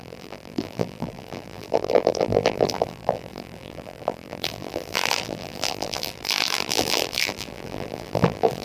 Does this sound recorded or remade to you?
remade